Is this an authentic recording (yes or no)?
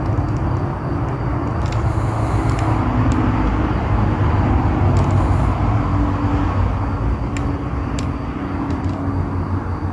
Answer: yes